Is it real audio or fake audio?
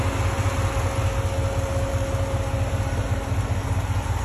real